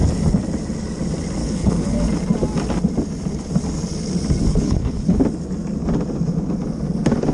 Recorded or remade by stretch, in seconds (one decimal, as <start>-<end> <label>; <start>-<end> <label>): 0.0-1.4 recorded; 1.4-2.0 remade; 2.0-4.5 recorded; 4.5-5.2 remade; 5.2-7.3 recorded